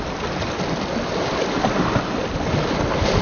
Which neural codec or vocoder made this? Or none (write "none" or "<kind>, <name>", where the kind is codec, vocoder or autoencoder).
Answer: none